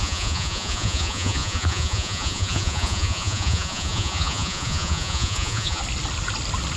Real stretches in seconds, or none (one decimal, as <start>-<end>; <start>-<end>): 5.8-6.8